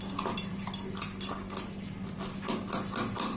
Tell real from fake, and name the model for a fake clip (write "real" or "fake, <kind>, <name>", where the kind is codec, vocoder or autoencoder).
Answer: real